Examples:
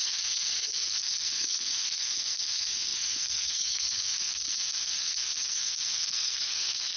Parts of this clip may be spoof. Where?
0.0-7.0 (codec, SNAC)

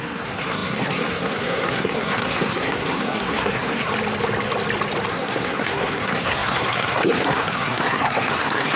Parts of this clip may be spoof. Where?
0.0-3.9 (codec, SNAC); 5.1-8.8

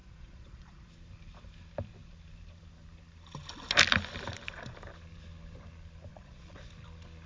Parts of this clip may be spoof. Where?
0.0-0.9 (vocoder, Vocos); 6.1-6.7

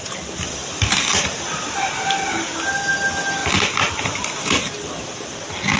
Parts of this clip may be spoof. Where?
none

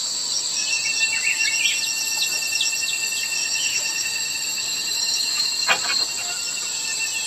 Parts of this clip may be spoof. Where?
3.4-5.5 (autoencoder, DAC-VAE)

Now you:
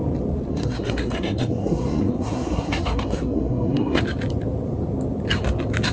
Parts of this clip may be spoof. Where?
0.5-4.0 (codec, SNAC)